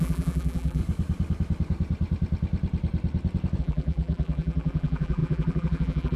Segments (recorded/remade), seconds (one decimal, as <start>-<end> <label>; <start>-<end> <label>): 0.0-0.8 remade; 0.8-3.6 recorded; 3.6-6.2 remade